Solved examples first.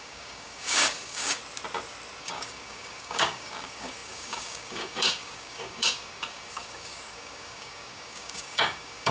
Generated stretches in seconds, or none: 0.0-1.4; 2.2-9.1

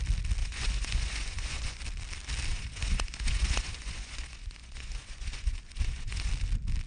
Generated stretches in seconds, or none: 0.4-1.8; 2.5-6.3

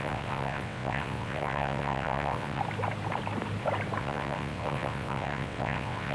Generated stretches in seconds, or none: 0.0-2.6; 4.0-6.1